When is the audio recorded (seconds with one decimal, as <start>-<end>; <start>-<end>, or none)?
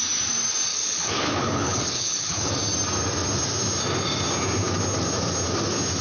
0.0-0.7; 2.5-6.0